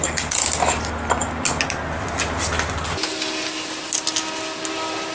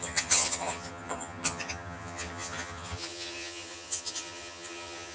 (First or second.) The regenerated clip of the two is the second